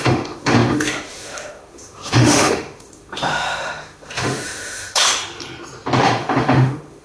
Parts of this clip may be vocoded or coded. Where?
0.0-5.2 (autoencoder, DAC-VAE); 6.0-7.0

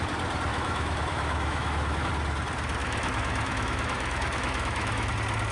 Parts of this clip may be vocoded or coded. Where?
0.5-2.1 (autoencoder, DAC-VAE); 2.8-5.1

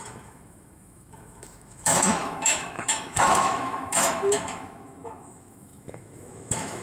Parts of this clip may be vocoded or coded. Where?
0.0-6.8 (autoencoder, DAC-VAE)

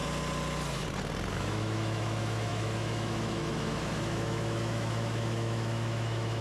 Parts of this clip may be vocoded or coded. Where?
1.3-6.4 (autoencoder, DAC-VAE)

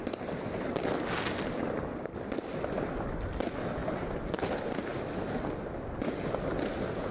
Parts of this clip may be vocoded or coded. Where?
none

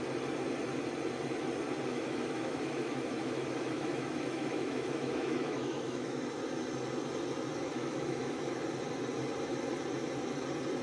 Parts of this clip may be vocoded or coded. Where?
1.9-6.2 (autoencoder, DAC-VAE); 7.7-8.4

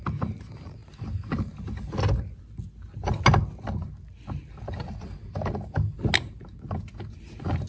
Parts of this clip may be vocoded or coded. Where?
none

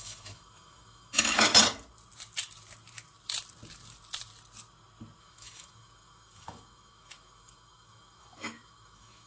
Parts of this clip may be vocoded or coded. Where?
0.0-1.5 (autoencoder, DAC-VAE); 5.2-9.3